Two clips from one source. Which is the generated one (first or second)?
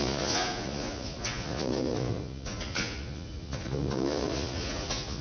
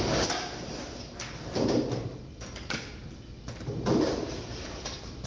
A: first